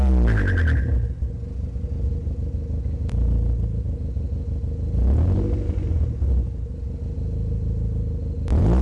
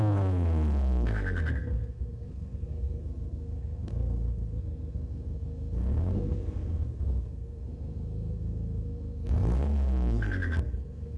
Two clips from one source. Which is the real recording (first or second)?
first